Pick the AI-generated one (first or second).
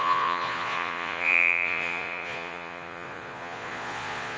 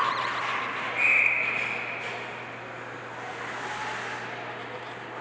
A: first